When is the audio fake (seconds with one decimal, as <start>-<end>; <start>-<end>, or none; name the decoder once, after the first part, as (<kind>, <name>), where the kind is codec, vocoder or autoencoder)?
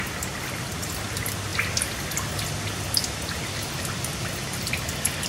none